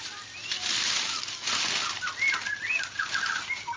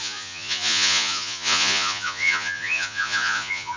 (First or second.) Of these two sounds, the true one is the first